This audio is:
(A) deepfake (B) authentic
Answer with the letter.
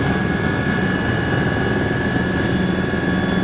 B